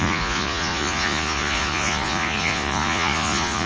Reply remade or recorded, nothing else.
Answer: remade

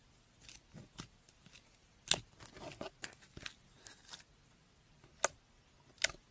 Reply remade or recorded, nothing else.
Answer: recorded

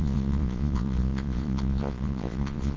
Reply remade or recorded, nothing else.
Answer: remade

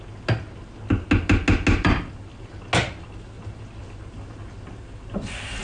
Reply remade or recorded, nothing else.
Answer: recorded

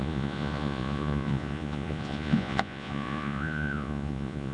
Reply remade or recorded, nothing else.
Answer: remade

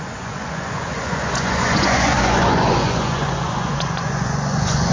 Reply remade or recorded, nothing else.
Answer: remade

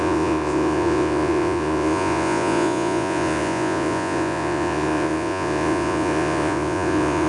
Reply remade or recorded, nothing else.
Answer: remade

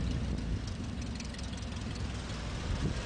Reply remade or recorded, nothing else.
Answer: recorded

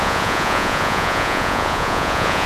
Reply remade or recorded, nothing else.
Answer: remade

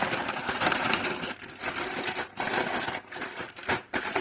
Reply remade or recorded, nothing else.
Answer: recorded